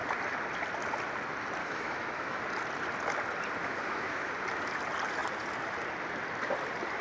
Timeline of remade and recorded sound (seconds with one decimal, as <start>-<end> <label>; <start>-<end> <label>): 0.0-1.6 recorded; 1.6-2.4 remade; 2.4-3.6 recorded; 3.6-4.3 remade; 4.3-7.0 recorded